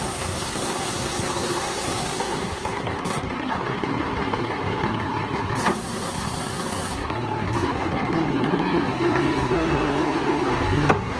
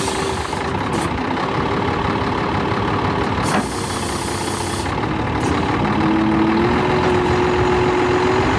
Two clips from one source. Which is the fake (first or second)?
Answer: first